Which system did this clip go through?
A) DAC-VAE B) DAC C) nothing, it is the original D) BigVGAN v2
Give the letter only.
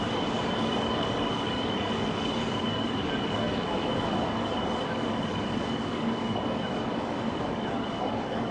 B